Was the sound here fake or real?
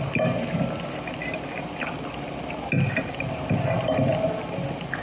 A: real